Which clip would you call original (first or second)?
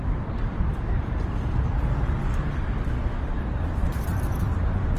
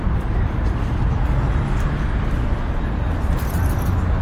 second